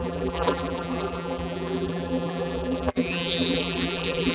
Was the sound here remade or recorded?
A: remade